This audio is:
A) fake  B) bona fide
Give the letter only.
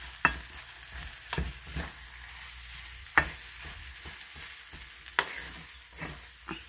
B